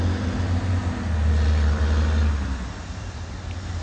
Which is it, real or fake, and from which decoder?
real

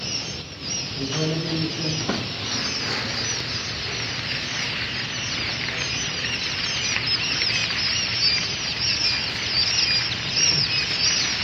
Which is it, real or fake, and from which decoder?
real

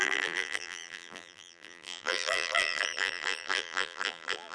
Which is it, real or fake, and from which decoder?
fake, vocoder, BigVGAN v2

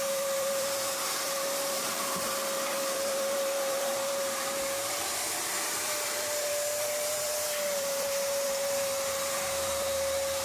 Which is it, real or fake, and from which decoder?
fake, vocoder, BigVGAN v2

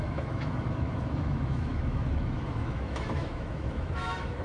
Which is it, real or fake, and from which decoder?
fake, autoencoder, DAC-VAE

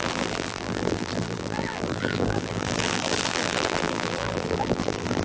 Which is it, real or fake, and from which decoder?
fake, vocoder, BigVGAN v2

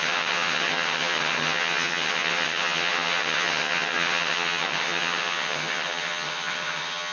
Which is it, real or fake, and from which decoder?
fake, vocoder, HiFi-GAN